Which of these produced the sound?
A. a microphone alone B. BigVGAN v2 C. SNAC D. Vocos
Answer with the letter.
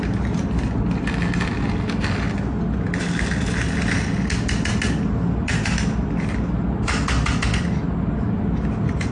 A